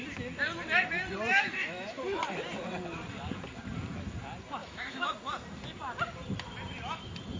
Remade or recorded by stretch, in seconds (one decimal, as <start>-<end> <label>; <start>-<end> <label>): 0.0-1.3 recorded; 1.3-2.2 remade; 2.2-4.6 recorded; 4.6-5.1 remade; 5.1-7.4 recorded